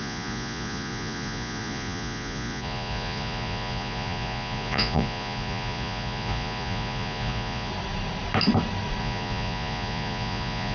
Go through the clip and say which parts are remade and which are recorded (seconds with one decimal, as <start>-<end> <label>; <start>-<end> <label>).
0.0-7.7 remade; 7.7-9.0 recorded; 9.0-10.7 remade